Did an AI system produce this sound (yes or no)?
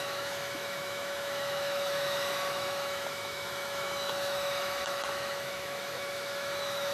yes